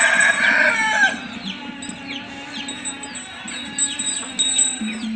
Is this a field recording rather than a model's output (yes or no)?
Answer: yes